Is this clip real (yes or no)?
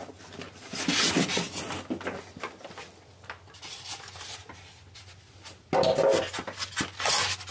yes